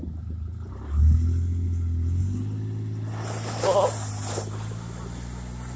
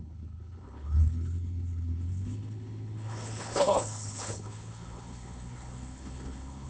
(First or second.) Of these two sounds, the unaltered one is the first